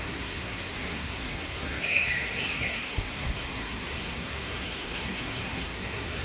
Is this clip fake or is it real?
fake